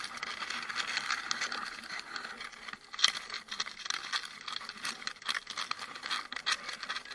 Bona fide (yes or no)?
yes